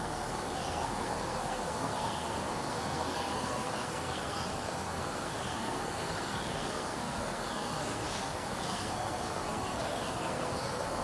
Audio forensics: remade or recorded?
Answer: remade